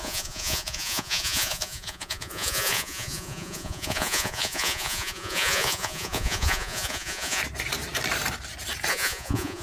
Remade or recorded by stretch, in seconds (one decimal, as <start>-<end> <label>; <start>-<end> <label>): 0.0-7.4 remade; 7.4-8.9 recorded; 8.9-9.6 remade

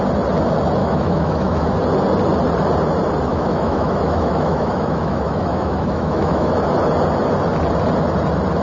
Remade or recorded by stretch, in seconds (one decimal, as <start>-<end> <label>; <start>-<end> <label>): 0.0-0.8 recorded; 0.8-1.7 remade; 1.7-3.3 recorded; 3.3-6.5 remade; 6.5-8.6 recorded

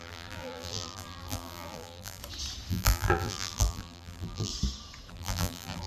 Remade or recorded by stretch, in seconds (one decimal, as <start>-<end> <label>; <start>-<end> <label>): 0.0-2.2 remade; 2.2-2.7 recorded; 2.7-4.5 remade; 4.5-5.1 recorded; 5.1-5.9 remade

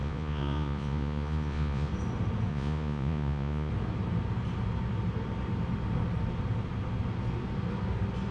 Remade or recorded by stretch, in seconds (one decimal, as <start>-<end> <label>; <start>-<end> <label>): 0.0-1.9 remade; 1.9-2.5 recorded; 2.5-3.7 remade; 3.7-8.3 recorded